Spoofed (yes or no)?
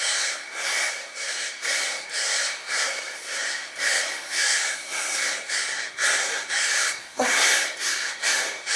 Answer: yes